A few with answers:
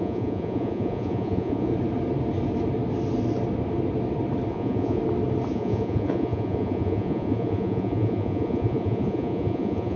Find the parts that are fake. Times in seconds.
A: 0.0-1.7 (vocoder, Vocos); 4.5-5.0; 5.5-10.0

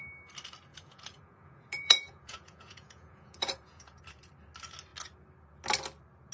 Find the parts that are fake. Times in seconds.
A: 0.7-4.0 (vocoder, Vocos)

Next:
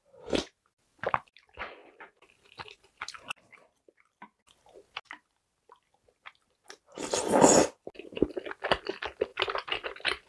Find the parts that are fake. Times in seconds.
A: none

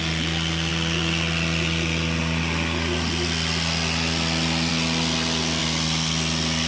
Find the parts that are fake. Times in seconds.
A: none

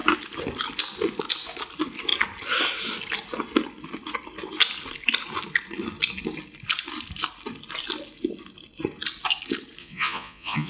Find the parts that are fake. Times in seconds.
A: 9.8-10.7 (vocoder, Vocos)

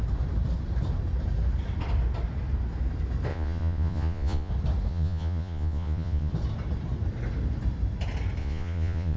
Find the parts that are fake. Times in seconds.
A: 3.3-4.5 (vocoder, Vocos); 4.9-6.3; 8.4-9.2

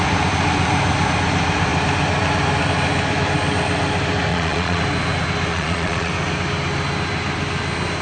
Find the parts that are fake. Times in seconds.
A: 4.3-4.8 (vocoder, Vocos); 5.5-6.1

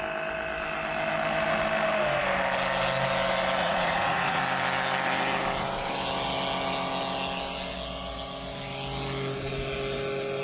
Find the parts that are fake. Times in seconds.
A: 3.6-4.4 (vocoder, Vocos)